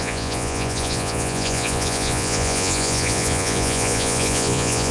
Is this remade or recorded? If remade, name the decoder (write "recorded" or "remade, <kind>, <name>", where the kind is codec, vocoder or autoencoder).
remade, vocoder, Vocos